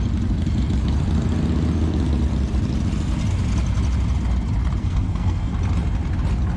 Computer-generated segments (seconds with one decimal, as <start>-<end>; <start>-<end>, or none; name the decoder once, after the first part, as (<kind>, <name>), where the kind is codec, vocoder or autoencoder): 4.8-5.5 (codec, SNAC)